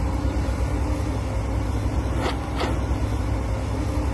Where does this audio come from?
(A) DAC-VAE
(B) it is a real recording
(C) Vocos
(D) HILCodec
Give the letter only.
B